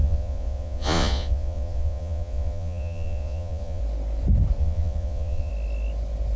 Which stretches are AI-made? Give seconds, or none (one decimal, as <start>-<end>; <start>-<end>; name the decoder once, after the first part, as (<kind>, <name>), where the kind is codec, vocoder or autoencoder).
0.0-3.8 (vocoder, Vocos); 4.6-5.5